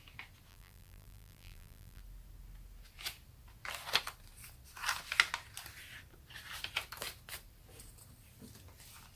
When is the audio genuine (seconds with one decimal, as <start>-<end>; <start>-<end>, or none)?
0.0-0.5; 2.0-9.2